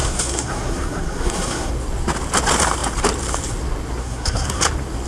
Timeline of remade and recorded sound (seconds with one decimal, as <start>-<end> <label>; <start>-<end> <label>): 0.0-1.7 remade; 1.7-4.0 recorded; 4.0-4.6 remade; 4.6-5.1 recorded

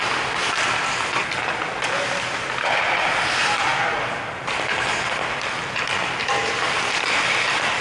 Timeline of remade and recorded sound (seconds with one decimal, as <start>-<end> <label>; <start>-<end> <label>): 0.0-7.8 recorded

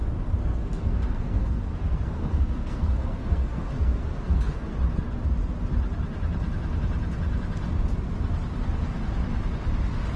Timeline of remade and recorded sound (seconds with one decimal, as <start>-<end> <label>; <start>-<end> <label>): 0.0-0.4 recorded; 0.4-4.8 remade; 4.8-10.2 recorded

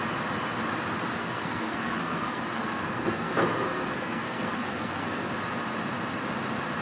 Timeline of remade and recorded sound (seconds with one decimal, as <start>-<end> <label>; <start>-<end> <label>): 0.0-1.2 recorded; 1.2-5.3 remade; 5.3-6.8 recorded